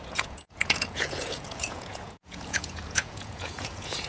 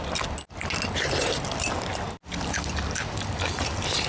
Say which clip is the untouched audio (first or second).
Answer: second